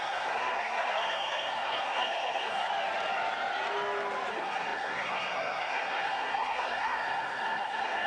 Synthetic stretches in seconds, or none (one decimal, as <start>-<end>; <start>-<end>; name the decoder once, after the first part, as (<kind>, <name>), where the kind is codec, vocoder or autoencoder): 0.0-2.7 (codec, SNAC); 4.3-8.1